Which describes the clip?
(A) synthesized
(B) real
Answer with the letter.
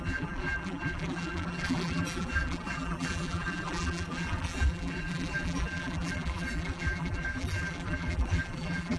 A